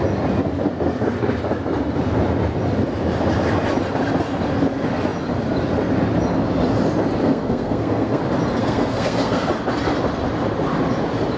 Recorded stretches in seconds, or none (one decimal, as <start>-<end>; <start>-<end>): 0.0-7.2; 8.2-8.6; 9.5-11.4